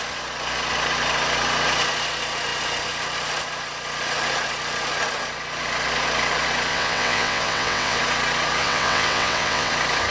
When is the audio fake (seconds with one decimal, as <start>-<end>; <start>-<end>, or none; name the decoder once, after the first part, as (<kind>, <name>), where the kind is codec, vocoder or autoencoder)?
6.7-8.0 (vocoder, WaveNeXt); 8.6-9.7